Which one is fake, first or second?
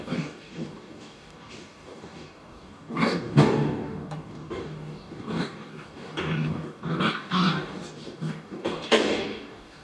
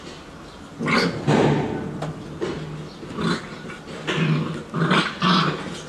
first